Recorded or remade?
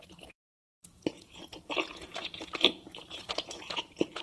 remade